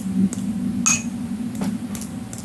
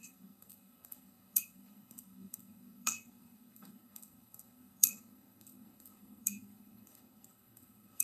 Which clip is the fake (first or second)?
second